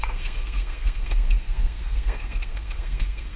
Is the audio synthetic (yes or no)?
yes